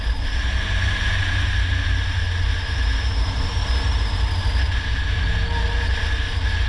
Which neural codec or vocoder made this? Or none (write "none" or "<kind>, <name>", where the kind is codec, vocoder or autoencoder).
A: none